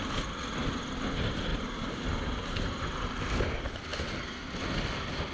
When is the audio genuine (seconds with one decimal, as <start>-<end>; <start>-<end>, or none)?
0.0-1.5; 2.6-5.3